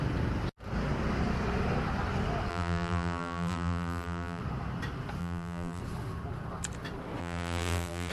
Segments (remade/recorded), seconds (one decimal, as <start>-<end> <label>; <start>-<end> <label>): 0.0-2.5 recorded; 2.5-4.4 remade; 4.4-5.2 recorded; 5.2-5.8 remade; 5.8-7.2 recorded; 7.2-8.1 remade

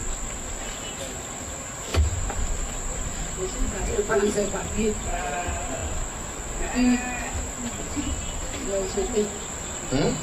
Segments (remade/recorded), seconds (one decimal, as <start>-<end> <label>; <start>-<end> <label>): 0.0-1.9 recorded; 1.9-3.2 remade; 3.2-4.2 recorded; 4.2-4.9 remade; 4.9-10.2 recorded